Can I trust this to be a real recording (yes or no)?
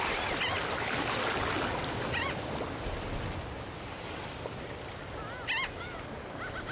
yes